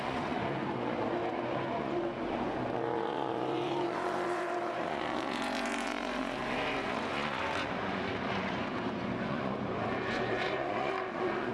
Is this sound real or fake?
fake